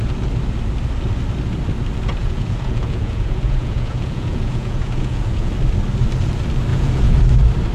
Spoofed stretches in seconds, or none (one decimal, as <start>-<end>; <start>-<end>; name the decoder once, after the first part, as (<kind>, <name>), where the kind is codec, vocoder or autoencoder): 2.2-5.5 (vocoder, Vocos); 6.7-7.2